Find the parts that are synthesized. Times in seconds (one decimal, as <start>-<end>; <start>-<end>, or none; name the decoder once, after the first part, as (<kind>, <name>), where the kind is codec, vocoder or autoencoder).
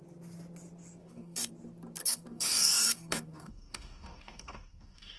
1.0-1.5 (codec, DAC); 2.0-5.2